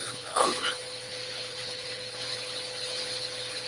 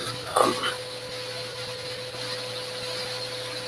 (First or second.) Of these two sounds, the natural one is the second